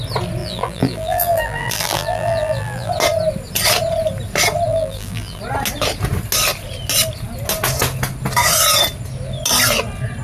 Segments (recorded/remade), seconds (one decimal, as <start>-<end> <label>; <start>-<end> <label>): 0.0-0.4 recorded; 0.4-2.9 remade; 2.9-4.7 recorded; 4.7-5.4 remade; 5.4-10.2 recorded